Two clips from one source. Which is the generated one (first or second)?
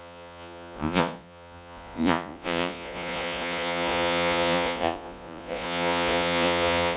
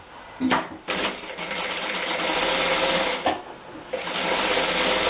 first